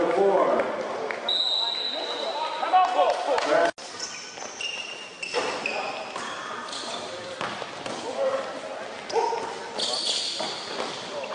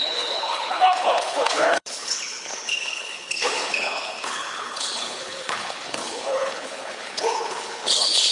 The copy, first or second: second